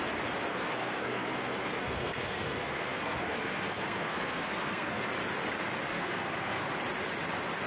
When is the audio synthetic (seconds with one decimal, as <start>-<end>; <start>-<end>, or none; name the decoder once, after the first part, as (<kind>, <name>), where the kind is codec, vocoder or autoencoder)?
0.5-5.1 (codec, SNAC); 5.9-6.6